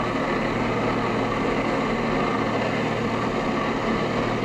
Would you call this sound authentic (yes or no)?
yes